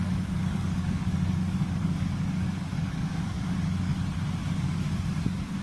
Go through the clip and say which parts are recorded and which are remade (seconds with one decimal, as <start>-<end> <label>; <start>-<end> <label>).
0.0-3.9 remade; 3.9-4.5 recorded; 4.5-5.6 remade